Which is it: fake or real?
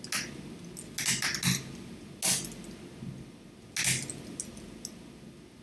real